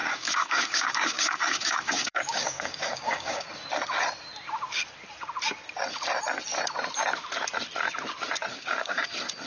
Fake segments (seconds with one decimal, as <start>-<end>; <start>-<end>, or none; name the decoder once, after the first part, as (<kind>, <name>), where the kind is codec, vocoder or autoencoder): 0.0-3.5 (codec, DAC); 8.5-9.1